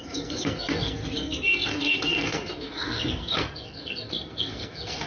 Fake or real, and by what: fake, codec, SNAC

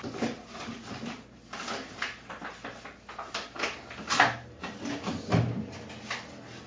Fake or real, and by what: real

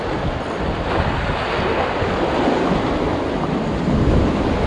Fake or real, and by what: real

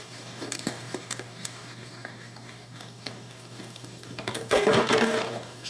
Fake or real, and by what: fake, codec, DAC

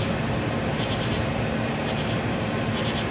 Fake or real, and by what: real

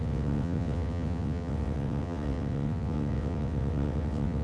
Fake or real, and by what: fake, vocoder, WaveNeXt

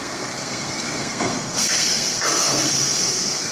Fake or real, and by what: fake, codec, SNAC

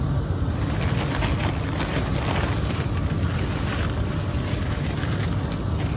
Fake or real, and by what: real